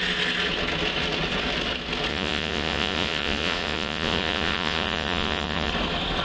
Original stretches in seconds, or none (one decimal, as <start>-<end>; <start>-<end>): 0.0-2.1; 5.7-6.2